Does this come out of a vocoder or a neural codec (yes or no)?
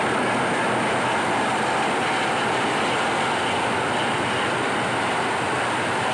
no